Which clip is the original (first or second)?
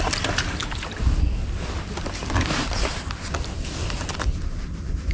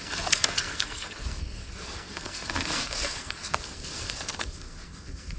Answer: first